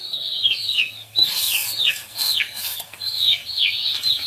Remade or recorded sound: remade